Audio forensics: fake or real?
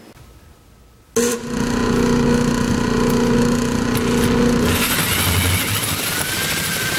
real